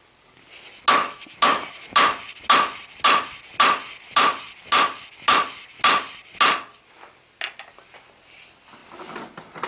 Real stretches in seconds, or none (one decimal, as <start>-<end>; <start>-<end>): 0.0-9.7